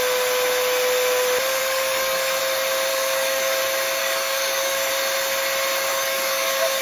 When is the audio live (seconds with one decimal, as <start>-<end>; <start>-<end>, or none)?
0.0-1.6; 2.4-2.9; 3.6-4.0; 4.9-5.9